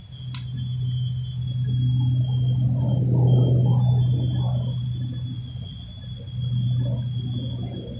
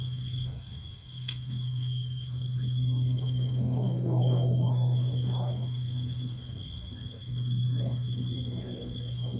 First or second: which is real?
first